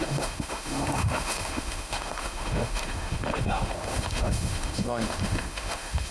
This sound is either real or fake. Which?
fake